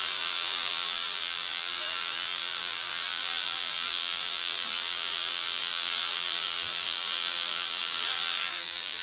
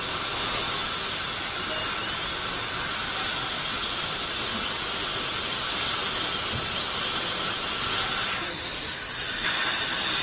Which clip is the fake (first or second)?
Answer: first